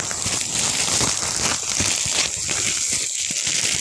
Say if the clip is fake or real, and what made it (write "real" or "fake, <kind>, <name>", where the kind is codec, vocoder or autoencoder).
real